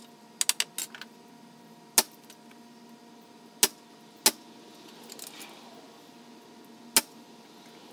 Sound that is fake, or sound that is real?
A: real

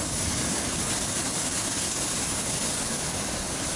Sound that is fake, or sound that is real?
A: fake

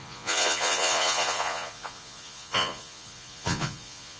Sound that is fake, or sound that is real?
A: fake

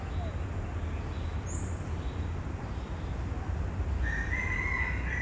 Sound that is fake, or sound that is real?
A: real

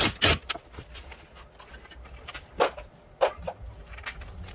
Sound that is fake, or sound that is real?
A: real